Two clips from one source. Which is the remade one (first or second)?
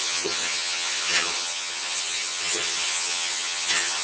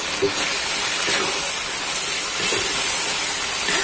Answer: first